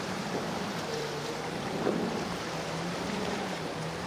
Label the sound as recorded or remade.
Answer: remade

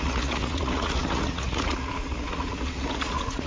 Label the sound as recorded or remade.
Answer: remade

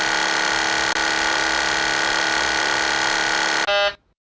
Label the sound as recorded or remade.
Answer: recorded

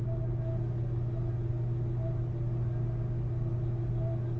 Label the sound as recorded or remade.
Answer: recorded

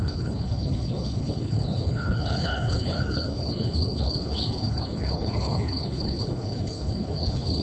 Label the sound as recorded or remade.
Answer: remade